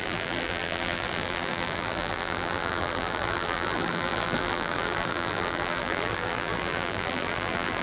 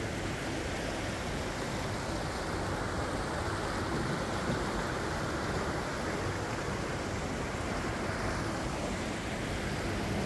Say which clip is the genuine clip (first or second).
second